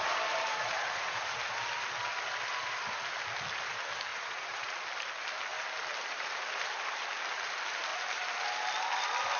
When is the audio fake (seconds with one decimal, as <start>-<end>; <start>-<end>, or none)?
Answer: 0.5-1.4; 4.1-4.7